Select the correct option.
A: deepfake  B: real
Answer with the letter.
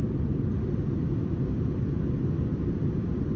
B